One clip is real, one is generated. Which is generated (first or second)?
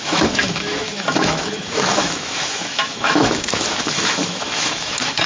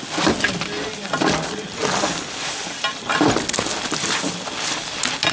first